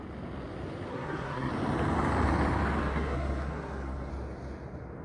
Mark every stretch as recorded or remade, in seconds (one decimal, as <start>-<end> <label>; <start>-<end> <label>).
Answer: 0.0-0.9 recorded; 0.9-1.5 remade; 1.5-2.8 recorded; 2.8-4.1 remade; 4.1-5.0 recorded